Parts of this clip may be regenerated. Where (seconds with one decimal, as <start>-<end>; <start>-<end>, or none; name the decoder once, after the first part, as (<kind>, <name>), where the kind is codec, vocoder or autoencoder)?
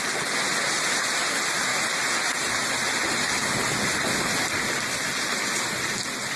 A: none